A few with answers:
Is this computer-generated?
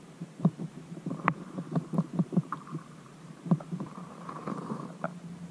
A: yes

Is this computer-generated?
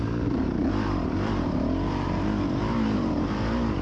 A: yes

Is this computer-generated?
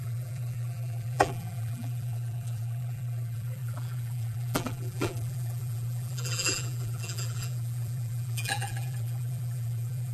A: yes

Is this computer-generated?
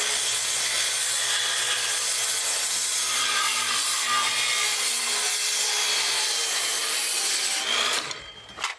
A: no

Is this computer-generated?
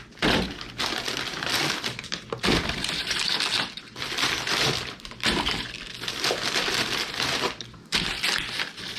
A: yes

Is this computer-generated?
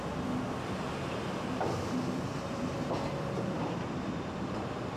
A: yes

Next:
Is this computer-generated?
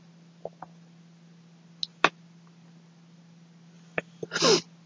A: no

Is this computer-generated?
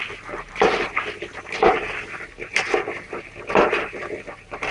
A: no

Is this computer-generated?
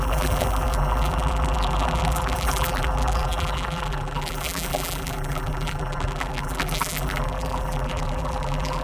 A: yes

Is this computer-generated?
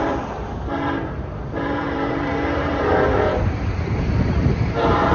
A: yes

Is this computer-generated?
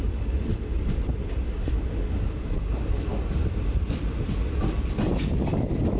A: no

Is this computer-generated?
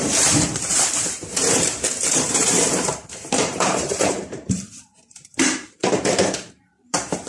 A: yes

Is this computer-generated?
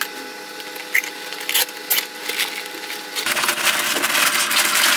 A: no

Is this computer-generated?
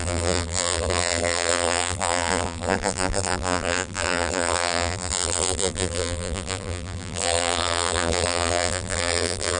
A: yes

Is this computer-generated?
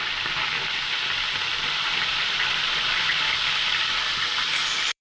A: yes